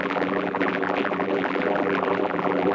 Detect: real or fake fake